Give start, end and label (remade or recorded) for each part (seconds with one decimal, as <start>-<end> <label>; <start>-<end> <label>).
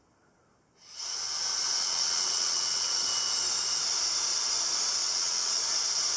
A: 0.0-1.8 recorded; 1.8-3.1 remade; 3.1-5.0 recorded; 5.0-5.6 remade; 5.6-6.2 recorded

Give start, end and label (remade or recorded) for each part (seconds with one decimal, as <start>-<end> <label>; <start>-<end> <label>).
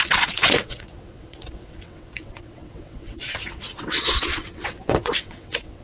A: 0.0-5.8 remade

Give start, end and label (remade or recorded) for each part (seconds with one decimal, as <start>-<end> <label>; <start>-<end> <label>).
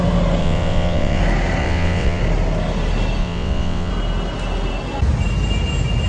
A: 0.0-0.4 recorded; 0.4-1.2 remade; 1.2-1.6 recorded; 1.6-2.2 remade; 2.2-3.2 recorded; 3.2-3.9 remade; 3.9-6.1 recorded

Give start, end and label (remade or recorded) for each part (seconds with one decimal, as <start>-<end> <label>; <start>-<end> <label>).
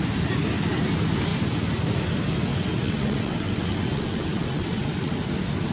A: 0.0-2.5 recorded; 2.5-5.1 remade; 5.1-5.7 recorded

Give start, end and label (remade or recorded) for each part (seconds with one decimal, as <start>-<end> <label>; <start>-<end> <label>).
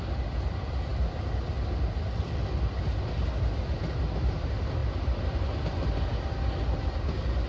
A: 0.0-7.5 recorded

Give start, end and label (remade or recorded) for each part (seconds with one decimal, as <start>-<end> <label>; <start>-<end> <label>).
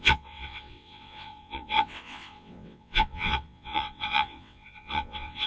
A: 0.0-5.5 remade